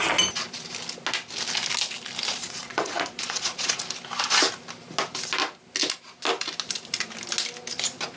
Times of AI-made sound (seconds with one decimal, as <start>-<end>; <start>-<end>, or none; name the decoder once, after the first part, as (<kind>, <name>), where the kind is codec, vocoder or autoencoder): 2.4-3.8 (vocoder, Vocos)